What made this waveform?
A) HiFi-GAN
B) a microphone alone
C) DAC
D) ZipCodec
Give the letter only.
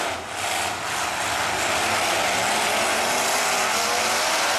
B